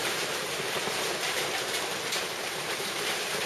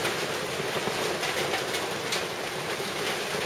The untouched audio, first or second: second